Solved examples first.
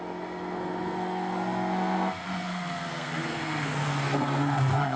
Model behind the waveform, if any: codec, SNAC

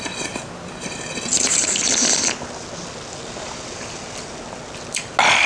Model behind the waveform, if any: none